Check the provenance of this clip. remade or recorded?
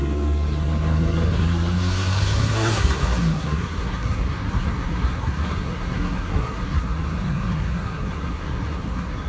remade